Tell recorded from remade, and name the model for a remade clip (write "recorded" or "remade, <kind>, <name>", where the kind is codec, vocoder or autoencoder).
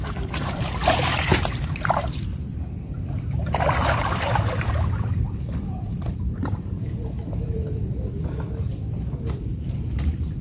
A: remade, vocoder, BigVGAN v2